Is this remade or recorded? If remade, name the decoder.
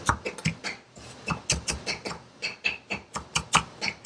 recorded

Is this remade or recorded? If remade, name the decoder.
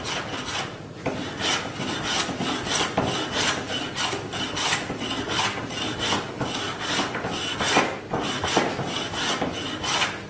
recorded